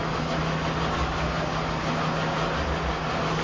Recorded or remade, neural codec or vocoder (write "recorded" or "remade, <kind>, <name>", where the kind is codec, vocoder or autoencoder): recorded